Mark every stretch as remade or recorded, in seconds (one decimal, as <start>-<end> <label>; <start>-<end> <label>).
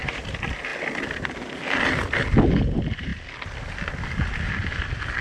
0.0-5.2 recorded